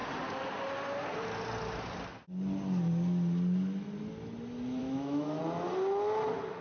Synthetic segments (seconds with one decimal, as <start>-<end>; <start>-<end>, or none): 4.8-5.4